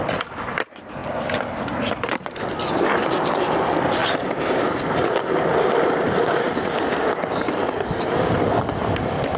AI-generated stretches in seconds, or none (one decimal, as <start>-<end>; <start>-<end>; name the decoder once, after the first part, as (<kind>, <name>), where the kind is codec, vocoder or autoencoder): 4.0-8.6 (vocoder, BigVGAN v2)